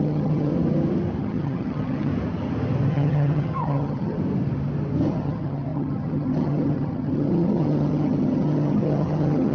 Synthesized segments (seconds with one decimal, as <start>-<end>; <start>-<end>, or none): 0.0-0.5; 1.2-2.1; 2.9-4.2; 5.1-9.5